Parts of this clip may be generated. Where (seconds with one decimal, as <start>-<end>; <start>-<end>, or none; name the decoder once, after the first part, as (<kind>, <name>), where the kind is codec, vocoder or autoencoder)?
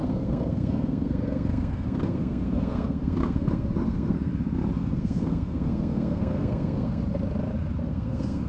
0.0-4.3 (codec, SNAC); 4.8-7.0; 7.8-8.5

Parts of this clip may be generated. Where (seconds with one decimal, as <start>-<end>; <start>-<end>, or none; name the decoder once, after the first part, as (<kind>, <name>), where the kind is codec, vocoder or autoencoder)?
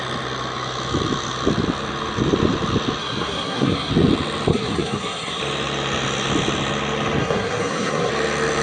3.0-3.9 (codec, SNAC); 4.5-5.4; 7.2-8.1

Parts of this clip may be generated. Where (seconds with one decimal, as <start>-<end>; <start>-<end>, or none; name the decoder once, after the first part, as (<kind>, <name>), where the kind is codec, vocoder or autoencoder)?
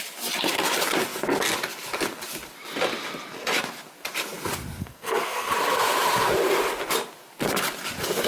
4.8-5.5 (codec, SNAC)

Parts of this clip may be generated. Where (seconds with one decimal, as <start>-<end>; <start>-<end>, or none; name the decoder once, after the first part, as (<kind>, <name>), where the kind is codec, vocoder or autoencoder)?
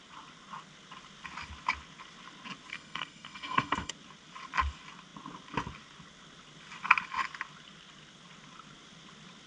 2.7-3.9 (codec, SNAC)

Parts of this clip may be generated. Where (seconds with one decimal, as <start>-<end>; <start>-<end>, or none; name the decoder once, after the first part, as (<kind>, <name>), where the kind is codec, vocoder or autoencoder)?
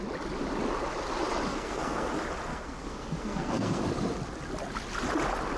1.5-2.1 (codec, SNAC); 2.5-3.8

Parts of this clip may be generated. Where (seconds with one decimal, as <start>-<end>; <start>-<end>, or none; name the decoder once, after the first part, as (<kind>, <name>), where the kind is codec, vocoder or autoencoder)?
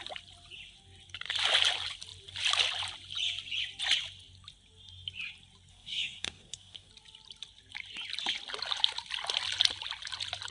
5.7-6.9 (codec, SNAC)